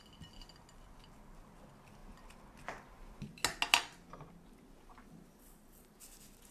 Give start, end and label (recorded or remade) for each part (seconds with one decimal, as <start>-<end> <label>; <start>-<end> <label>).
0.0-6.5 recorded